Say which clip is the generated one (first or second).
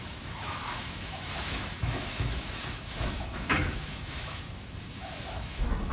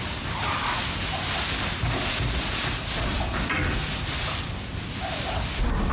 first